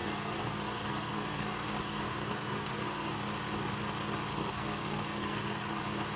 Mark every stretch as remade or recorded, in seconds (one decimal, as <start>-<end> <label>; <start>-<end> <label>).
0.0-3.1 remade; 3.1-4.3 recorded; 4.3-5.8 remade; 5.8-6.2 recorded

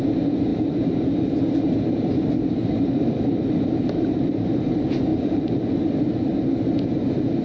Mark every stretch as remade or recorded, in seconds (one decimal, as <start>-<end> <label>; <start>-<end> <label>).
0.0-7.4 remade

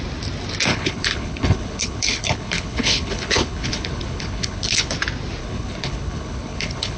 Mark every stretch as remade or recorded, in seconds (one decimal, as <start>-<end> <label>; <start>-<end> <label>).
0.0-0.7 recorded; 0.7-4.9 remade; 4.9-5.4 recorded; 5.4-7.0 remade